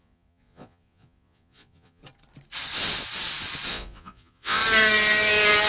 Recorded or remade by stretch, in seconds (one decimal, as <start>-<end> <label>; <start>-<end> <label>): 0.0-2.0 remade; 2.0-3.7 recorded; 3.7-4.6 remade; 4.6-5.7 recorded